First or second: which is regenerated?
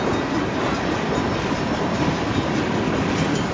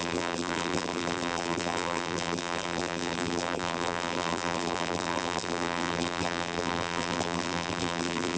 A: second